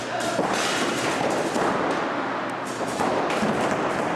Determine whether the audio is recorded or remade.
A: recorded